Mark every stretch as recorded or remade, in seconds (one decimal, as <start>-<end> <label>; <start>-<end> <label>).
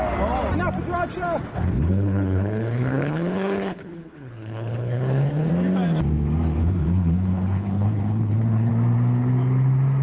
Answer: 0.0-1.5 recorded; 1.5-5.5 remade; 5.5-6.6 recorded; 6.6-8.7 remade; 8.7-10.0 recorded